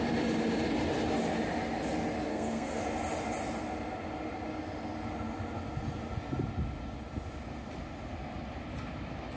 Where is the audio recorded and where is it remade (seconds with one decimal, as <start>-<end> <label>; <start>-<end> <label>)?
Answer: 0.0-2.3 recorded; 2.3-2.8 remade; 2.8-9.4 recorded